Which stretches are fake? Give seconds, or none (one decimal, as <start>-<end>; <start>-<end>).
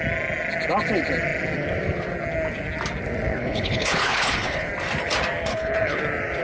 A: 3.3-4.7; 5.5-6.0